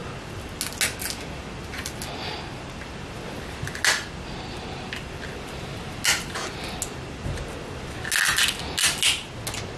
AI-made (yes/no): no